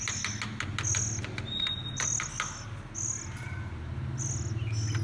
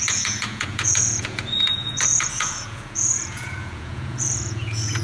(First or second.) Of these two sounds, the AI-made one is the second